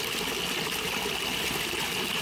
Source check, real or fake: real